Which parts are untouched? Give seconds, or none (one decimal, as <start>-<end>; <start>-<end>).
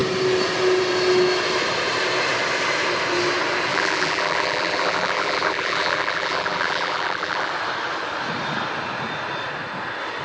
0.0-3.7; 7.5-10.2